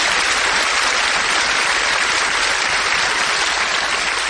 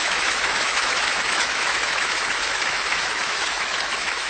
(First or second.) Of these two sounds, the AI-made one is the second